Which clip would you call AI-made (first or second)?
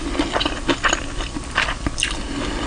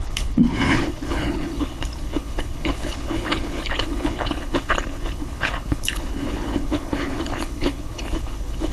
second